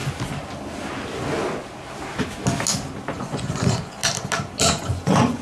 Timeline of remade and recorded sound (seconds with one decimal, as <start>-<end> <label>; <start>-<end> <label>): 0.0-3.2 recorded; 3.2-4.0 remade; 4.0-4.7 recorded; 4.7-5.4 remade